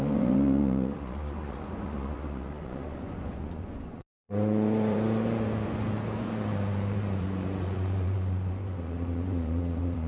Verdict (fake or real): fake